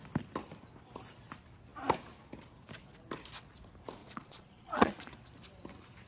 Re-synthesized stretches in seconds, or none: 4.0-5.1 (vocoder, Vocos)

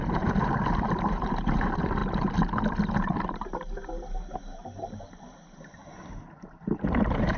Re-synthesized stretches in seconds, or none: 0.0-2.0 (vocoder, BigVGAN v2); 6.4-7.4

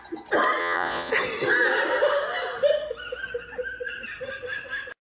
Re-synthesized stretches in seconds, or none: 0.6-1.1 (vocoder, Vocos)

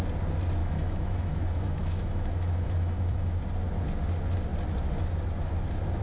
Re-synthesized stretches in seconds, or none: 0.6-3.4 (autoencoder, DAC-VAE)

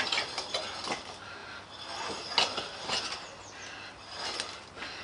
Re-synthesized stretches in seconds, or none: none

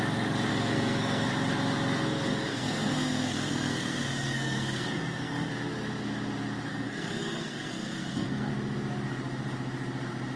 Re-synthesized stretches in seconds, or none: 0.5-1.3 (codec, SNAC); 2.5-5.5; 6.7-8.5